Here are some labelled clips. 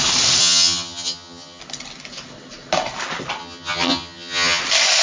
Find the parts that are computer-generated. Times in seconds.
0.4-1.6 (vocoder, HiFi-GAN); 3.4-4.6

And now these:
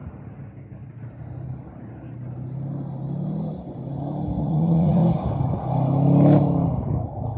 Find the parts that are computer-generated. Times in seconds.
4.4-5.0 (vocoder, Vocos)